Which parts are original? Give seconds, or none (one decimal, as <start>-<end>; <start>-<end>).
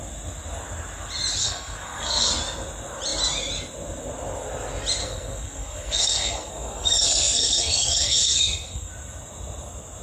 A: 0.0-1.4; 2.3-5.0; 8.9-10.0